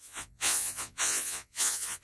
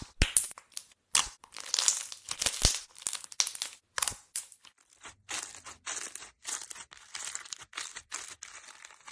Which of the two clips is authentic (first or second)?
second